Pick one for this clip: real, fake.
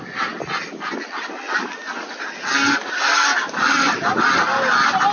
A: real